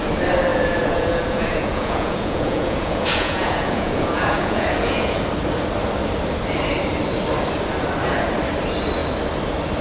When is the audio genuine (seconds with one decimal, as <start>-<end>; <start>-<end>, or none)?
0.0-0.5; 5.2-9.8

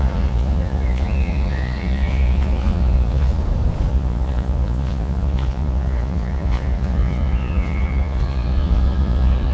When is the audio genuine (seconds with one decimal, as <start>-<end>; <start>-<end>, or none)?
3.4-3.9

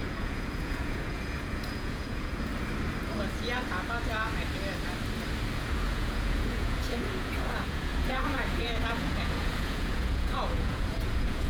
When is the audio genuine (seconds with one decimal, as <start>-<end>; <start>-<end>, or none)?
2.5-5.6

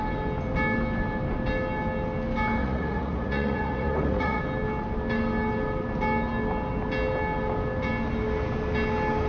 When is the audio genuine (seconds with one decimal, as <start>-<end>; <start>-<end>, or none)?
0.0-2.6; 4.4-9.3

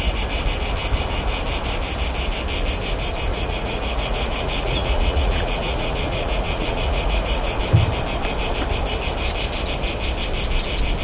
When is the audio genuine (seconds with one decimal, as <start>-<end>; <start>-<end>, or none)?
0.0-3.3; 7.6-11.0

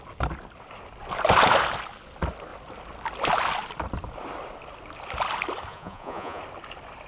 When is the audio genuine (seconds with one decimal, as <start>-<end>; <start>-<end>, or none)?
0.0-5.7; 6.4-7.1

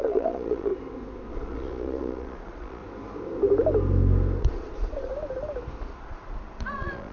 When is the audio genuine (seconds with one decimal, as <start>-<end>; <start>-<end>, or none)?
0.7-1.3; 2.8-4.4; 5.1-5.8